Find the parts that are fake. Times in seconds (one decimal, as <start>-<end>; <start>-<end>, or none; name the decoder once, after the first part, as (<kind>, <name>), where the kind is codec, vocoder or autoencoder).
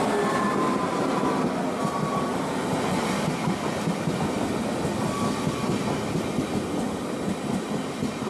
none